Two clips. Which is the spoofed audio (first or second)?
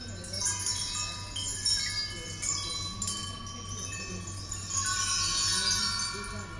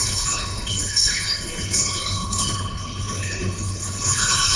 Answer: second